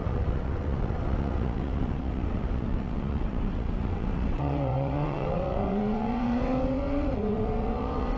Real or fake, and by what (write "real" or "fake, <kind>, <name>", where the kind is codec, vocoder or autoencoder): fake, vocoder, WaveNeXt